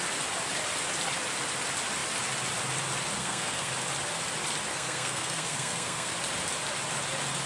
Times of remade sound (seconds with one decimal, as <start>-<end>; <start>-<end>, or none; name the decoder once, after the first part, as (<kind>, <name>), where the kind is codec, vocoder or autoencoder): 3.2-3.7 (codec, SNAC); 4.7-6.1